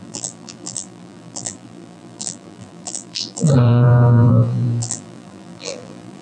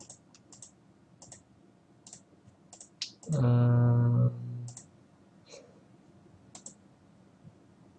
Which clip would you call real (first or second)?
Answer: second